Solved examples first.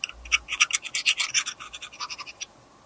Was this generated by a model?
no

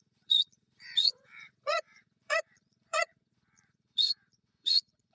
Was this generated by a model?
yes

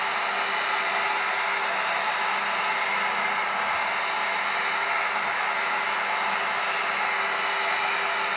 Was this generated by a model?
no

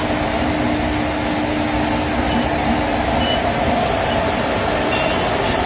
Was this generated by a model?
no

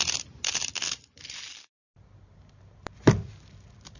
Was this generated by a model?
no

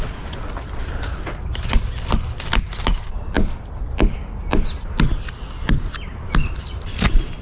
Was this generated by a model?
no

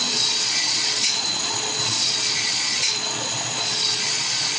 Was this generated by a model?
yes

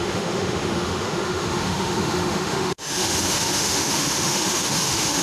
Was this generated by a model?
yes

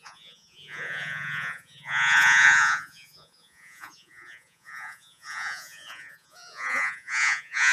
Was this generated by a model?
yes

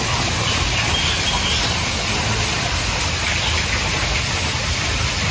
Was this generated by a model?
no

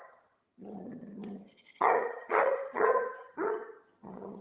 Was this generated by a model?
yes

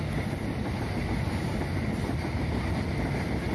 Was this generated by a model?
no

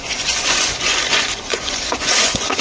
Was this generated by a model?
yes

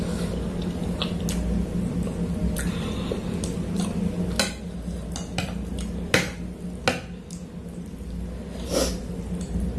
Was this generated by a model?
no